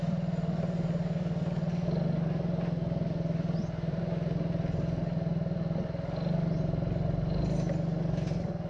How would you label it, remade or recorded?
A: recorded